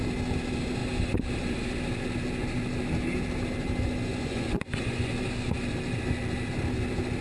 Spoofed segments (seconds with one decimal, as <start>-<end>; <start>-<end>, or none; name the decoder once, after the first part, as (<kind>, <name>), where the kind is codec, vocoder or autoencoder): 4.1-5.1 (vocoder, Vocos)